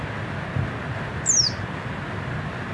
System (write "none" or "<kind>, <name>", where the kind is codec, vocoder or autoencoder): none